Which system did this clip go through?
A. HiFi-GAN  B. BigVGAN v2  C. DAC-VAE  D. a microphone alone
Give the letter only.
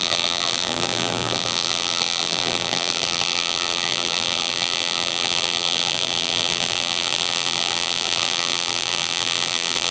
B